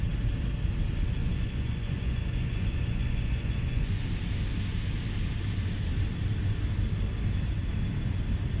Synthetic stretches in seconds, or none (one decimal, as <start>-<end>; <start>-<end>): 1.2-4.0